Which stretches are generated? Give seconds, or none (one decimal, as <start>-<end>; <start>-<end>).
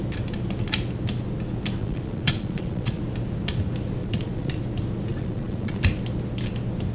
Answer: 1.8-3.0; 4.0-4.6; 5.1-5.8